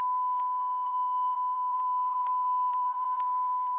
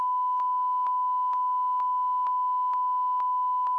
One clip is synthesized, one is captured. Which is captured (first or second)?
second